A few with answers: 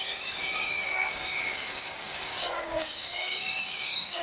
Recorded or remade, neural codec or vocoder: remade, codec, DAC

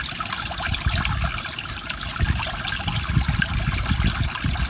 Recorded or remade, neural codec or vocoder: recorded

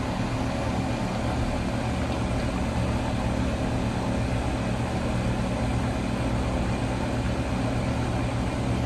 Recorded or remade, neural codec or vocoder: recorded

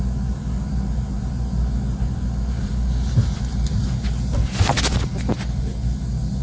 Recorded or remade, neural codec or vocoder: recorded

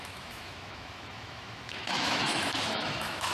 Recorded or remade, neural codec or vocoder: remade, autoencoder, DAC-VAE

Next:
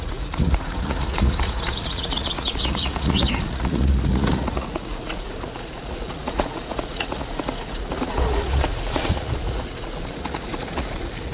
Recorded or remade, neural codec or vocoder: remade, vocoder, Vocos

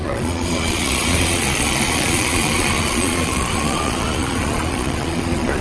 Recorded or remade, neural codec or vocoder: remade, vocoder, Vocos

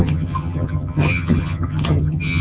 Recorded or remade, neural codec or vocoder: remade, vocoder, HiFi-GAN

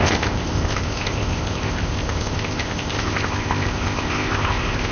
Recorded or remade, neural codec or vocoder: remade, codec, ZipCodec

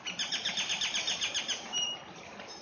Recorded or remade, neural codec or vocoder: recorded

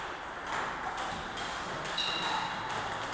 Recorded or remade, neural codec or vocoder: recorded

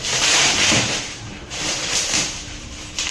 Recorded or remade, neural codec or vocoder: remade, vocoder, BigVGAN v2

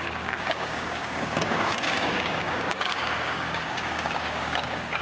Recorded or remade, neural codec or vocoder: remade, codec, DAC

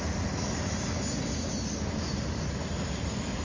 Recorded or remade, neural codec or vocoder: recorded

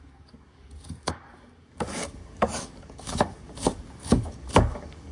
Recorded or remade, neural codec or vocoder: remade, codec, DAC